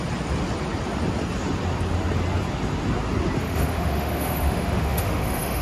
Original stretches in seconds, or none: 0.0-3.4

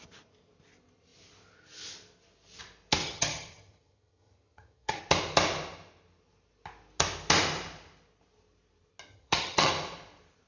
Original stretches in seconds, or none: 0.0-3.0; 5.0-9.1; 9.7-10.5